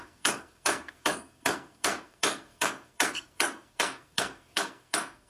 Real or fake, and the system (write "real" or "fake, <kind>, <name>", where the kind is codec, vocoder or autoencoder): fake, codec, SNAC